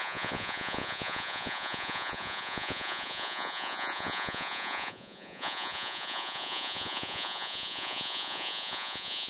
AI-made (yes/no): yes